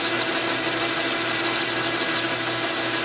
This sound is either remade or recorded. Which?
recorded